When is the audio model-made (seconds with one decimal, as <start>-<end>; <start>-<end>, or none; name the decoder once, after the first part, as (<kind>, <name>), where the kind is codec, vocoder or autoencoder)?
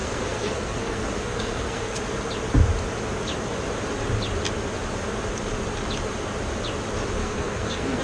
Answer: 0.0-2.0 (codec, SNAC); 7.2-8.0